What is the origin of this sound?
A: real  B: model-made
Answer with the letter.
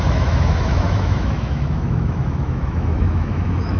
B